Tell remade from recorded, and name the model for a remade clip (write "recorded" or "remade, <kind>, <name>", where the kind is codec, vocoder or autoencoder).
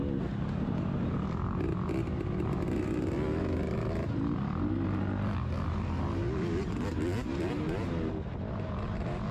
recorded